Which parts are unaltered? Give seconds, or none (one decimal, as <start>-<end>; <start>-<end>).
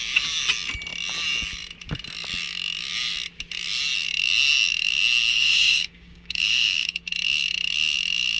0.0-5.3; 7.1-8.4